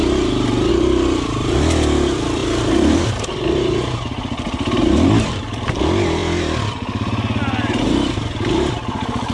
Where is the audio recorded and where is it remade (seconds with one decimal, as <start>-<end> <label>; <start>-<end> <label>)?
0.0-0.7 recorded; 0.7-9.3 remade